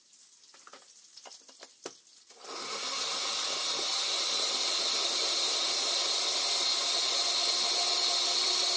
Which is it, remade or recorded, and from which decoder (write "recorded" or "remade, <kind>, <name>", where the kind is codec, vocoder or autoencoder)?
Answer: recorded